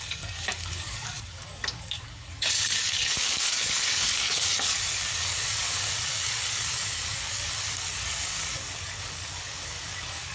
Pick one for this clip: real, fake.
fake